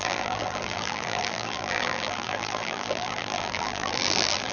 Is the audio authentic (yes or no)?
no